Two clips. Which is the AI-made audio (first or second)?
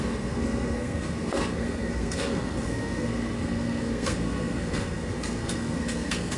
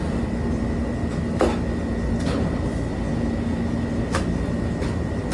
first